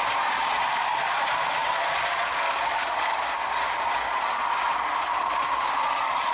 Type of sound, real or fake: real